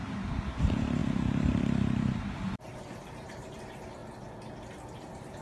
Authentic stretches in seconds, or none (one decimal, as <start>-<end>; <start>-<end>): 4.0-4.9